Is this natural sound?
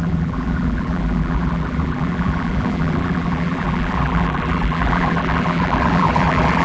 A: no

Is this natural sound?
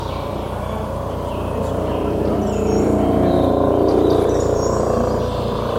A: no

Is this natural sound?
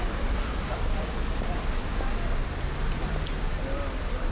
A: yes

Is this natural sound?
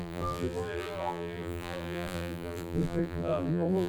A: no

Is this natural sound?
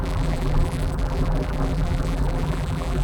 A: no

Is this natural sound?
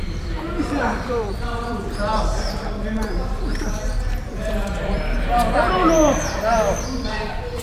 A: no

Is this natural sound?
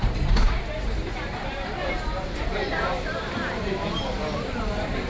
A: no